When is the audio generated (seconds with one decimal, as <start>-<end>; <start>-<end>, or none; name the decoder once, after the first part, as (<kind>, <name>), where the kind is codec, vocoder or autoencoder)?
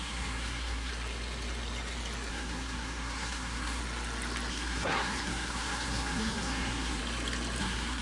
0.0-0.9 (codec, SNAC); 2.3-3.8; 4.5-7.0; 7.6-8.0